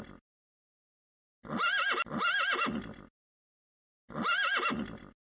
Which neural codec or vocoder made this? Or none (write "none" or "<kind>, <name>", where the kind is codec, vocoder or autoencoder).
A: none